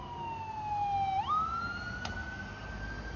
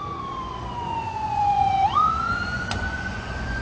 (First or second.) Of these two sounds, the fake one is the second